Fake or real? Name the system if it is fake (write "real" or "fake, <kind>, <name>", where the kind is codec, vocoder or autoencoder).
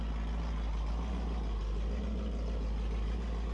real